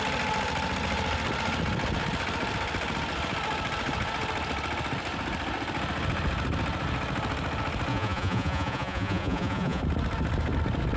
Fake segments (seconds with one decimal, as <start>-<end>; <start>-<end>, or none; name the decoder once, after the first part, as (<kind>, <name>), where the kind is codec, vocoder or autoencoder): 7.9-9.8 (vocoder, Vocos)